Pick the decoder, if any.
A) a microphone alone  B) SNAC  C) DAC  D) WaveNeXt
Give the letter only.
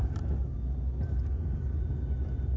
A